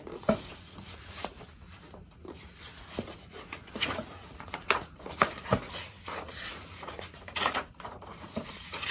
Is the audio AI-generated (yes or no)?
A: yes